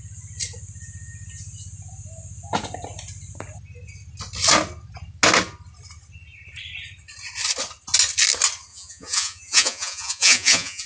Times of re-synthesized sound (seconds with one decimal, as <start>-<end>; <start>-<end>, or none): 8.7-10.9